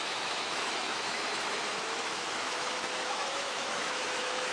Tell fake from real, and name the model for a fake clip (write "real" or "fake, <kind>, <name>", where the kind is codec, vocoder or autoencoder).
fake, autoencoder, DAC-VAE